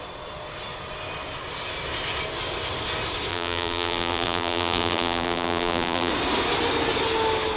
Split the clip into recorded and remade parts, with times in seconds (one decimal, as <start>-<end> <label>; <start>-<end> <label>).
0.0-3.3 recorded; 3.3-6.1 remade; 6.1-7.6 recorded